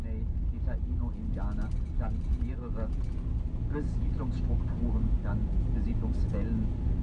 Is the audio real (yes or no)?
yes